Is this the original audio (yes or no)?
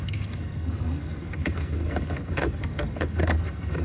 no